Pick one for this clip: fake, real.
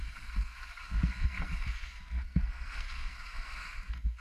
fake